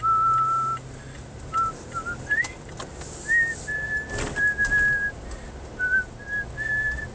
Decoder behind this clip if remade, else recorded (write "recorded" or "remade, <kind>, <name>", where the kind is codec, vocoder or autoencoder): recorded